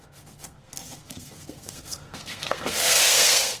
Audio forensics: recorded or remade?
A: remade